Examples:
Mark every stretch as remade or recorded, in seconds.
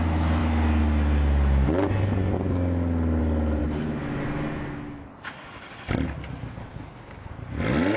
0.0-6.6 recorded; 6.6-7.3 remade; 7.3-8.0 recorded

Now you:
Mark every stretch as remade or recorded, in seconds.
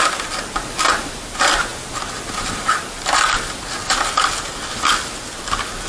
0.0-5.9 recorded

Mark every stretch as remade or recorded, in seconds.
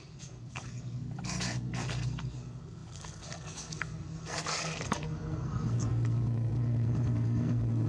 0.0-7.9 remade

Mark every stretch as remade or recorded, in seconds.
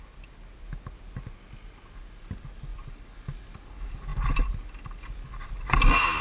0.0-6.2 recorded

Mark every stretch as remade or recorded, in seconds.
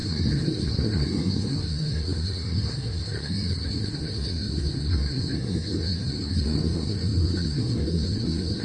0.0-8.6 remade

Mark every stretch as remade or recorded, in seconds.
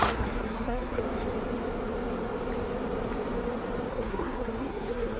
0.0-1.0 remade; 1.0-3.9 recorded; 3.9-5.2 remade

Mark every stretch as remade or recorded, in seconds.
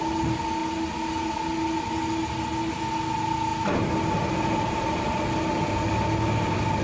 0.0-6.8 recorded